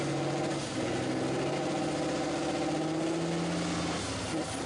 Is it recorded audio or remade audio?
recorded